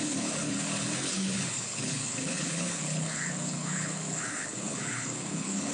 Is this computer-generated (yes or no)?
yes